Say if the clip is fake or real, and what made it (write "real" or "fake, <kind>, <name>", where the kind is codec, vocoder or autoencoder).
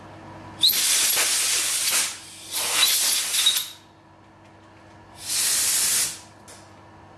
real